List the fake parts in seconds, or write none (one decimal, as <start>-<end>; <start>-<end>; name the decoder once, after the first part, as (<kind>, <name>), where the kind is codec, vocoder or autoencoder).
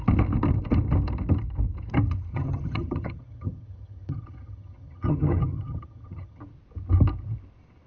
2.3-6.4 (vocoder, HiFi-GAN)